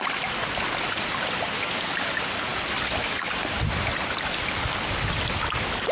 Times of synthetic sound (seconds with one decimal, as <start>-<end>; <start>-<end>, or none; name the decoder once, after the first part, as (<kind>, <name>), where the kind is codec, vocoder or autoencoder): none